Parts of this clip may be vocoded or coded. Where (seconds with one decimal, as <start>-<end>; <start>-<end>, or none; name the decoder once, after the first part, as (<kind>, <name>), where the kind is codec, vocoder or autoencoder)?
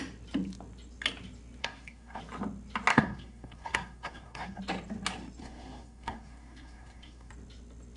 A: 1.6-2.2 (codec, SNAC); 2.9-4.6; 5.4-7.3